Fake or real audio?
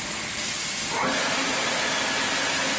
real